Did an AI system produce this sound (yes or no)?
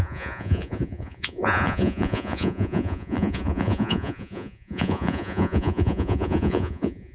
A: yes